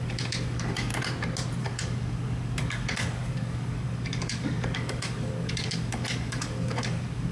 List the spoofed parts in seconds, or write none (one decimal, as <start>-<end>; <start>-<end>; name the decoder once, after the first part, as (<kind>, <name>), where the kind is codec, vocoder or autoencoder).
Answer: 0.0-0.9 (codec, DAC); 1.6-7.3